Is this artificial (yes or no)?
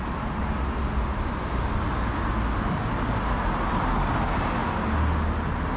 no